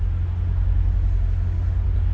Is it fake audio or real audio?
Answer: real